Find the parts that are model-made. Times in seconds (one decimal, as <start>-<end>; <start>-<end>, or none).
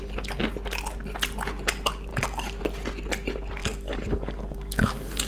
2.1-2.6; 3.6-5.3